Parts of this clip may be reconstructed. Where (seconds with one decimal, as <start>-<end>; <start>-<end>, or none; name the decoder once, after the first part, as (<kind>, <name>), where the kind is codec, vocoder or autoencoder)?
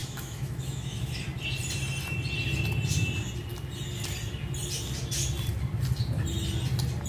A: 0.0-1.1 (autoencoder, DAC-VAE)